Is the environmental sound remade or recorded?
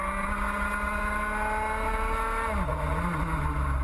recorded